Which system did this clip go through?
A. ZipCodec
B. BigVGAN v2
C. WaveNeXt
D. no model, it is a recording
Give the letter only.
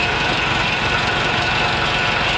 D